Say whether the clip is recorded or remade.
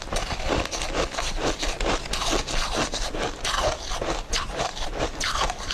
recorded